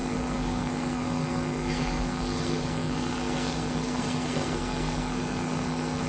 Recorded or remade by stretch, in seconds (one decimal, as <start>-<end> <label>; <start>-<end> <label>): 0.0-6.1 remade